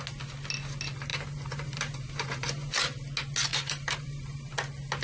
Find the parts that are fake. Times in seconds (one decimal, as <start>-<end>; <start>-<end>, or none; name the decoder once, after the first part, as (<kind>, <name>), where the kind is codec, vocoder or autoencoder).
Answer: 1.1-2.8 (vocoder, BigVGAN v2); 3.5-4.5